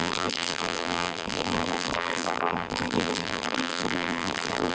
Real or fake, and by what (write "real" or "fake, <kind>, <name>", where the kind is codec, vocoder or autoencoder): fake, vocoder, BigVGAN v2